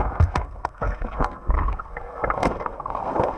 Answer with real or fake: fake